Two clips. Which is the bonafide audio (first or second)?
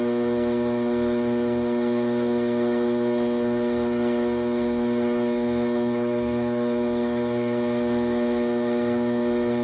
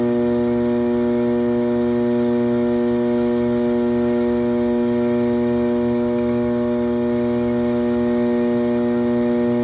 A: second